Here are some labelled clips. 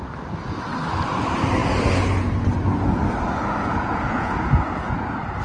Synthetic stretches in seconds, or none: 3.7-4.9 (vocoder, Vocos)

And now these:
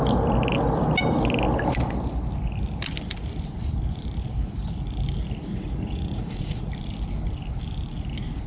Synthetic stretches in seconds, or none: 5.5-6.7 (vocoder, Vocos)